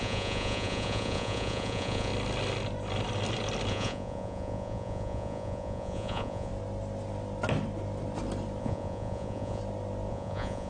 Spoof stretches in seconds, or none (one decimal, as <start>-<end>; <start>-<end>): 0.0-2.1; 3.7-6.5; 8.6-9.6; 10.1-10.7